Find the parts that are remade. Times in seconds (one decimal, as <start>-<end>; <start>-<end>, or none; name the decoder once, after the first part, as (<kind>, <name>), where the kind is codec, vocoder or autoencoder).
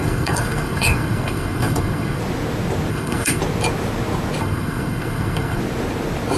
0.0-2.2 (codec, SNAC); 2.9-3.4; 4.4-5.6